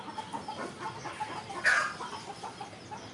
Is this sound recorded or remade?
recorded